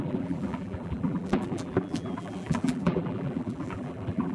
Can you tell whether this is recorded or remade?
remade